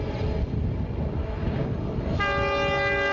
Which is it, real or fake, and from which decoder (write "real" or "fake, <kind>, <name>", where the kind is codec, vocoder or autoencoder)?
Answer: real